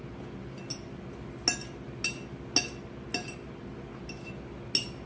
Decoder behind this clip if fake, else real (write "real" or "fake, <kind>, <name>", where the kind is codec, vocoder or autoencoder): real